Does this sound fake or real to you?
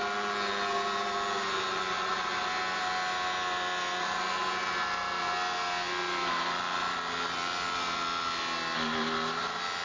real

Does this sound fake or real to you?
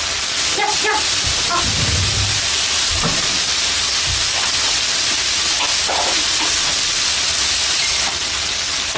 real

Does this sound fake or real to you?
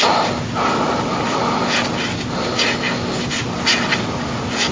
real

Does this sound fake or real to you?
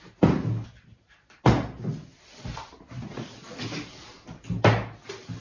real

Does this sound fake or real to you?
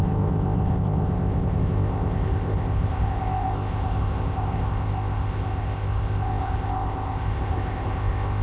fake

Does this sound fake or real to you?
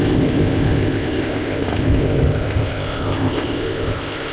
fake